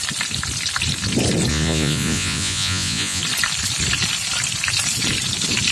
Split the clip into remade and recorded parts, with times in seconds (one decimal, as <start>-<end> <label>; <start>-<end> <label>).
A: 0.0-1.5 recorded; 1.5-3.2 remade; 3.2-5.7 recorded